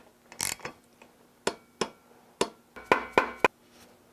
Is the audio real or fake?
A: real